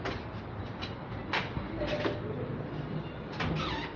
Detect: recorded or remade recorded